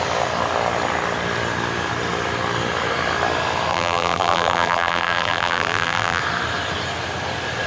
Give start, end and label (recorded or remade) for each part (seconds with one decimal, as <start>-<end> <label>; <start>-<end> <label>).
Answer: 0.0-3.7 recorded; 3.7-6.2 remade; 6.2-7.7 recorded